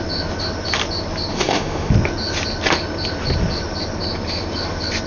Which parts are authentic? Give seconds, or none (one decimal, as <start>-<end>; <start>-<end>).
0.0-1.3; 1.9-5.1